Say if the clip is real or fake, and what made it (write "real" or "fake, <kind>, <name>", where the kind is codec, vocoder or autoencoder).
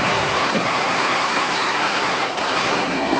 fake, codec, SNAC